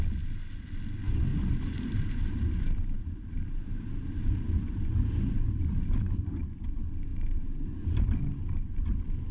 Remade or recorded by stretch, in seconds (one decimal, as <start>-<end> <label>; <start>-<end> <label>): 0.0-1.3 recorded; 1.3-4.8 remade; 4.8-7.1 recorded; 7.1-8.1 remade; 8.1-9.3 recorded